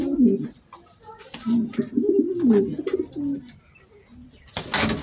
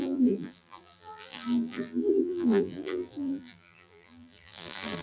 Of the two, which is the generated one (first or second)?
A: second